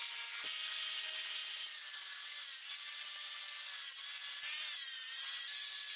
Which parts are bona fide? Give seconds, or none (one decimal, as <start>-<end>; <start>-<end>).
0.0-1.4; 3.6-6.0